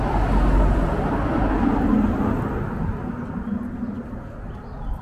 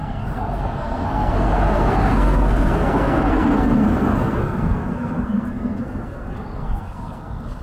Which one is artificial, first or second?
second